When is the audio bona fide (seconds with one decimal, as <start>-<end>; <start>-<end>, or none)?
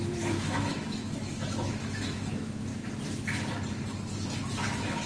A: 2.7-4.6